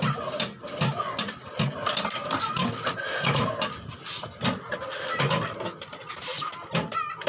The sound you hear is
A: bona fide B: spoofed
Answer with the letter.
A